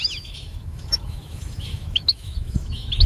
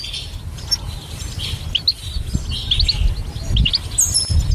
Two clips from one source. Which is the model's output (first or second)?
first